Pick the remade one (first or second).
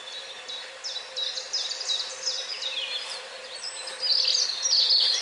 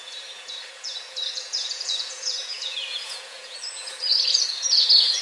second